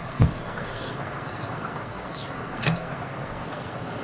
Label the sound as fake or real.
fake